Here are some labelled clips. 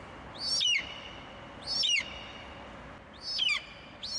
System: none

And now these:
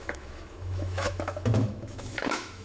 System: autoencoder, DAC-VAE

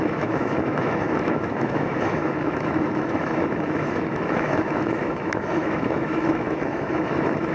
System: autoencoder, DAC-VAE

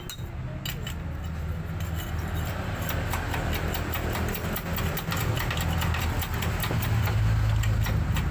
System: none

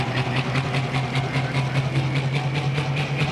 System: none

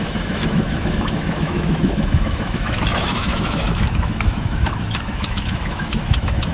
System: autoencoder, DAC-VAE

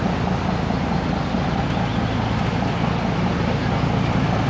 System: none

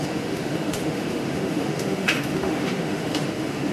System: autoencoder, DAC-VAE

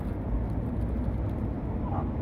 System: none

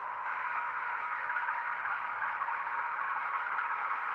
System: autoencoder, DAC-VAE